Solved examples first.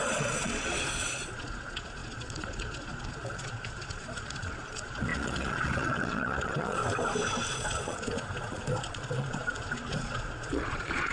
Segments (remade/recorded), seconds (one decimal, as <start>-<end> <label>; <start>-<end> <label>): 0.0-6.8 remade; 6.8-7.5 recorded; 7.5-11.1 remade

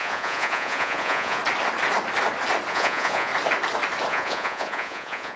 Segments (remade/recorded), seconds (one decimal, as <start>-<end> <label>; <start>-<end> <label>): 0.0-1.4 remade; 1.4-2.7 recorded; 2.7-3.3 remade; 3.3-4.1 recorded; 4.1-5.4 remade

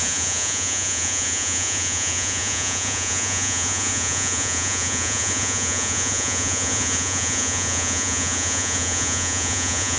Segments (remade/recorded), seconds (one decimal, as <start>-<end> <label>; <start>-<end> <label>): 0.0-10.0 remade

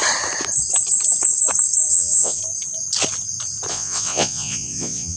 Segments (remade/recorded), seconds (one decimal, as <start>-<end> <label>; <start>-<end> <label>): 0.0-1.9 recorded; 1.9-2.4 remade; 2.4-3.7 recorded; 3.7-5.2 remade